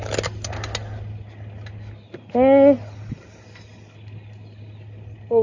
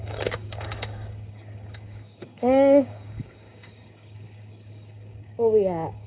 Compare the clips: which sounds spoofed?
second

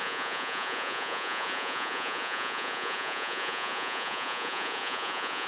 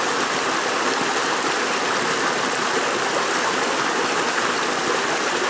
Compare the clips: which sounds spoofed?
first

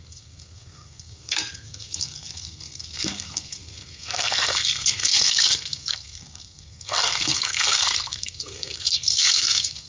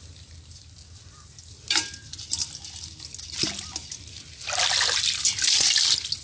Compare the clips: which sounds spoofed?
first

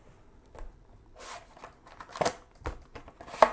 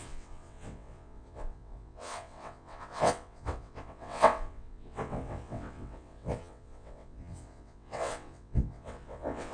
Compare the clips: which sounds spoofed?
second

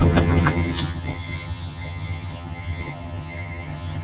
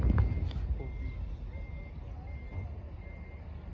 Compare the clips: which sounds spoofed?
first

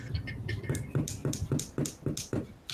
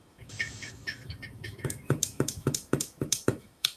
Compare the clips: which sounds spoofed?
second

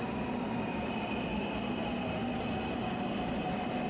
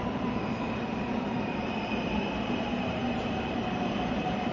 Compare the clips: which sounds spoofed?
second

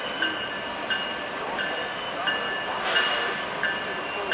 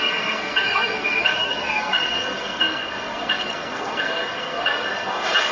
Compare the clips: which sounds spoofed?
second